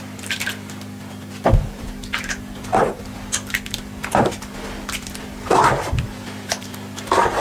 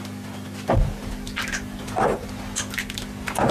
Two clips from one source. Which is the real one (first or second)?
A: second